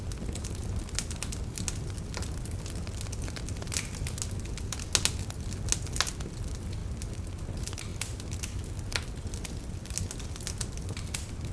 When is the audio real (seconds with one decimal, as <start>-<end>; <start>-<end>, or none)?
0.0-11.5